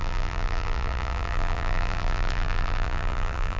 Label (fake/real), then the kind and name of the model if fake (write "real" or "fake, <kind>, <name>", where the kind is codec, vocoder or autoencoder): fake, vocoder, BigVGAN v2